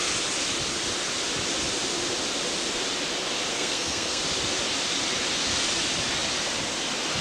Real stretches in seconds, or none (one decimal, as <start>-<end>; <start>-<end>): 0.0-3.5; 4.2-7.2